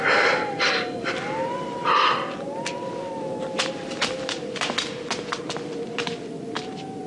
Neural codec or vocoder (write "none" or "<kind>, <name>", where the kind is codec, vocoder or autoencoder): none